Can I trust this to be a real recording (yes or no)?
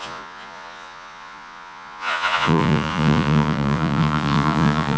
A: no